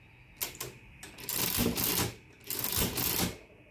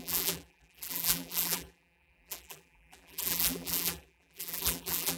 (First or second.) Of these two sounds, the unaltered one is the first